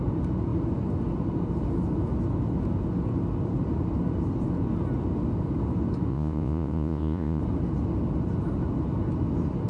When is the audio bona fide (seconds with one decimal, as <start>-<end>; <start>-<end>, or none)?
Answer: 0.0-6.1; 7.4-9.7